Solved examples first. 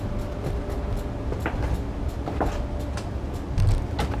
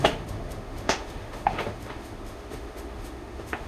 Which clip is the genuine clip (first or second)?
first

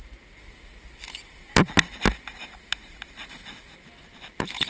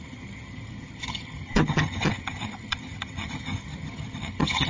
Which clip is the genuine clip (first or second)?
first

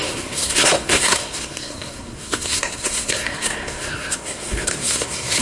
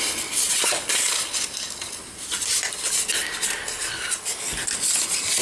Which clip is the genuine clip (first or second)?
second